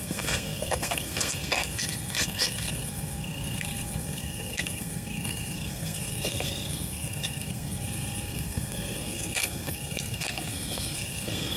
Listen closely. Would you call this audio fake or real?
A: fake